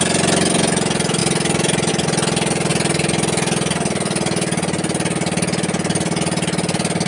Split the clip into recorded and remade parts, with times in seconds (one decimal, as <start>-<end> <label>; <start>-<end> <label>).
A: 0.0-7.1 recorded